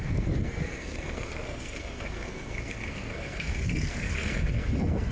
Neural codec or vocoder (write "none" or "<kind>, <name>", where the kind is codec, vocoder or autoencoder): codec, SNAC